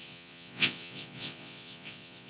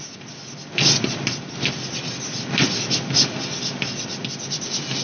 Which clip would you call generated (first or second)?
first